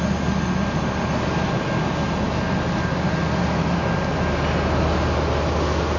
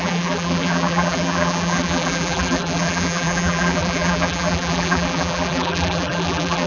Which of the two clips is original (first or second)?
first